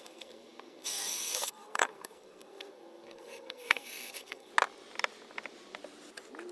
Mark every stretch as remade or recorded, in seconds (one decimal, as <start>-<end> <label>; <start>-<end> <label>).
0.0-4.5 remade; 4.5-6.5 recorded